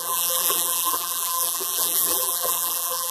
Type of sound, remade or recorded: remade